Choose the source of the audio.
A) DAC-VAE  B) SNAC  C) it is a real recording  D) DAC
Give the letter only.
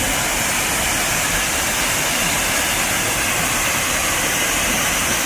C